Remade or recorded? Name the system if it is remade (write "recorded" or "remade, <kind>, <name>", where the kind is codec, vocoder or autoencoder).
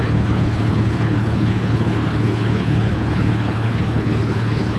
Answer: remade, codec, HILCodec